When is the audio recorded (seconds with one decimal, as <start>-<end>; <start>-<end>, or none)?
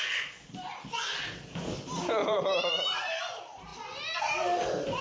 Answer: 0.0-2.2; 2.7-5.0